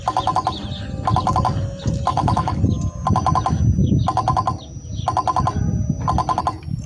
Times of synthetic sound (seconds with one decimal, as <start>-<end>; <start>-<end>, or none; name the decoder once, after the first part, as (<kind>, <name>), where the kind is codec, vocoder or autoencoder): 2.1-2.6 (codec, HILCodec)